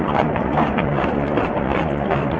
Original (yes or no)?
no